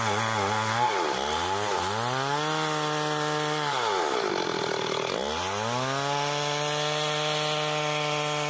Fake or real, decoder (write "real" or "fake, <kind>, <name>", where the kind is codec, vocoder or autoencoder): real